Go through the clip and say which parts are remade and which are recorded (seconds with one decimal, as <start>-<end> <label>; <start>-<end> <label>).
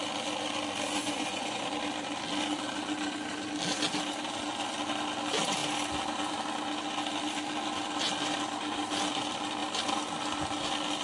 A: 0.0-1.0 recorded; 1.0-1.6 remade; 1.6-11.0 recorded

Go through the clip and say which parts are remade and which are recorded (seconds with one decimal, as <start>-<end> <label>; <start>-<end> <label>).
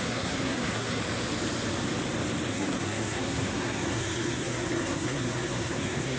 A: 0.0-1.0 remade; 1.0-2.5 recorded; 2.5-6.2 remade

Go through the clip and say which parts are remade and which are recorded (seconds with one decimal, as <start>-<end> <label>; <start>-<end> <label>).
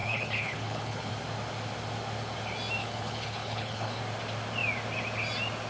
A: 0.0-1.1 remade; 1.1-2.8 recorded; 2.8-4.0 remade; 4.0-5.7 recorded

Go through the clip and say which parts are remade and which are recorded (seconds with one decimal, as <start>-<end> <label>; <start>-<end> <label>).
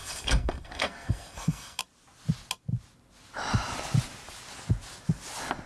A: 0.0-1.8 remade; 1.8-5.7 recorded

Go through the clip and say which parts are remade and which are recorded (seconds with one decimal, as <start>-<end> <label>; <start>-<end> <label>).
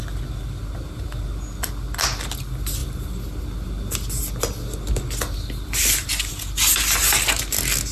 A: 0.0-7.9 recorded